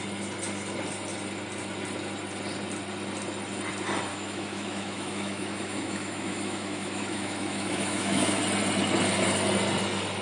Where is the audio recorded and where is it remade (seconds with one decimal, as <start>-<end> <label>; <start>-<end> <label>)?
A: 0.0-4.1 recorded; 4.1-8.4 remade; 8.4-10.2 recorded